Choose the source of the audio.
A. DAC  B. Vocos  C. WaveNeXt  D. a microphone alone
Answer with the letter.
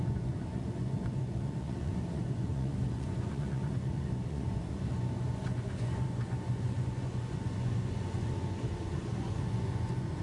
B